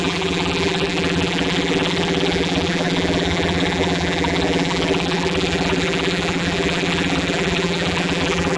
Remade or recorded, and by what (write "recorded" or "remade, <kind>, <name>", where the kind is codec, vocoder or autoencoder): remade, vocoder, BigVGAN v2